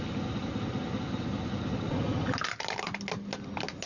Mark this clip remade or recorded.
recorded